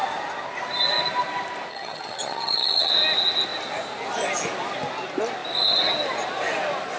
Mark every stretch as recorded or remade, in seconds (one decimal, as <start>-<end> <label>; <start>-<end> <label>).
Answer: 0.0-1.7 recorded; 1.7-2.9 remade; 2.9-7.0 recorded

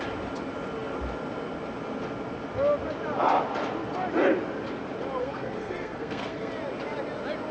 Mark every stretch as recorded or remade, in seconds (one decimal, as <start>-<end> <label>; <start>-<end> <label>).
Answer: 0.0-5.2 recorded; 5.2-6.5 remade; 6.5-7.5 recorded

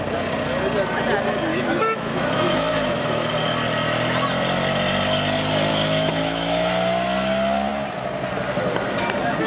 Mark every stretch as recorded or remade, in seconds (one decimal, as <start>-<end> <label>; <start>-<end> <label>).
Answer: 0.0-1.5 recorded; 1.5-3.3 remade; 3.3-5.7 recorded; 5.7-6.7 remade; 6.7-9.5 recorded

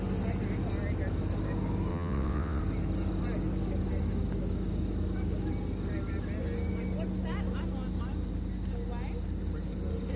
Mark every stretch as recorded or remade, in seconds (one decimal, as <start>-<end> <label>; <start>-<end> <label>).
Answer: 0.0-1.9 recorded; 1.9-2.6 remade; 2.6-10.2 recorded

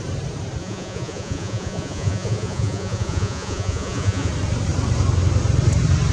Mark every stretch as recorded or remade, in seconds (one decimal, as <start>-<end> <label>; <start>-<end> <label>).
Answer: 0.0-0.6 recorded; 0.6-4.3 remade; 4.3-6.1 recorded

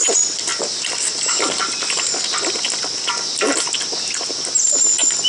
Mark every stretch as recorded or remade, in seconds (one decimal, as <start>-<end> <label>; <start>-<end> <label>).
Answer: 0.0-5.3 recorded